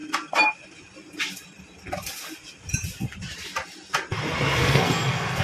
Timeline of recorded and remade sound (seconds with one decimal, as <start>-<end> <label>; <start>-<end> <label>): 0.0-4.6 recorded; 4.6-5.4 remade